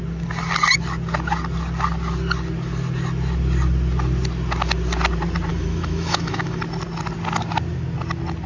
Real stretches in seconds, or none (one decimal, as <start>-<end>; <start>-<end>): 0.0-5.5; 6.6-8.5